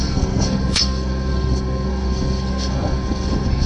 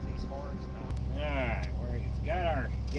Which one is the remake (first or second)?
first